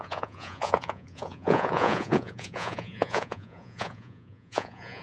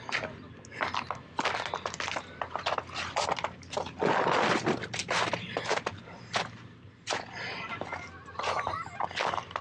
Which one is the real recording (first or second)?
second